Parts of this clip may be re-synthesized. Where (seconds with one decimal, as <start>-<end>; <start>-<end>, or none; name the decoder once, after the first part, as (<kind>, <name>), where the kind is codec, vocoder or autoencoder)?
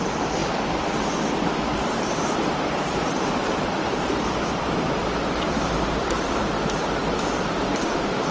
0.0-8.3 (vocoder, BigVGAN v2)